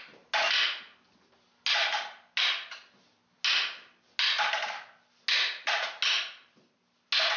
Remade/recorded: recorded